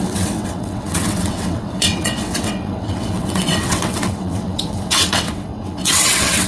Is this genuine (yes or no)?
no